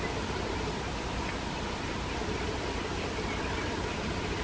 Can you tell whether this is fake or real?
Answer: real